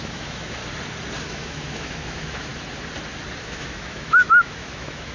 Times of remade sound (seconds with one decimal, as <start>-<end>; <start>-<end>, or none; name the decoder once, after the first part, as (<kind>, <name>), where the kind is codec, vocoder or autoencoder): 0.0-0.6 (autoencoder, DAC-VAE); 1.2-2.5; 3.4-5.1